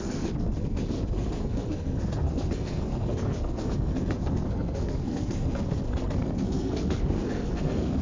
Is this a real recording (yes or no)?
no